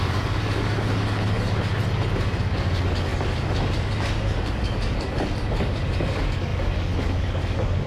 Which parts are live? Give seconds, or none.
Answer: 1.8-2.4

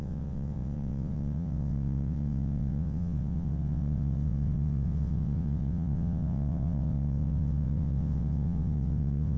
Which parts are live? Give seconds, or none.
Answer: none